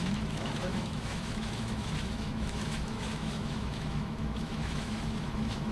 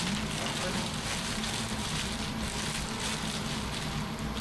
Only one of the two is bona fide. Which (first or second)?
second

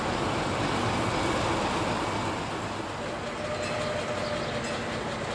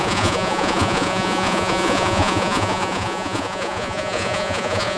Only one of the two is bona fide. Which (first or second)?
first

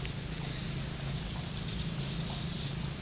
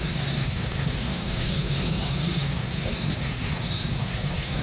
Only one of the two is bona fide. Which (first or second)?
first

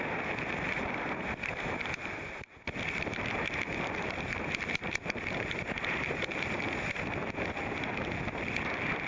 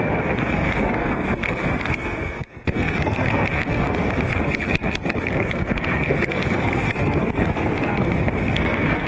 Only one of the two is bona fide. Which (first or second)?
first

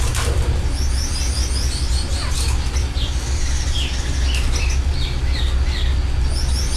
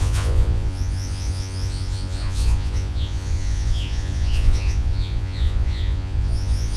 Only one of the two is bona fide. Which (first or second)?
first